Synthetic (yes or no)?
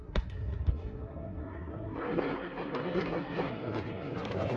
yes